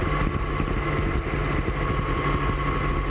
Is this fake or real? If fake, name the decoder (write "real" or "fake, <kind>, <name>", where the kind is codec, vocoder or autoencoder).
real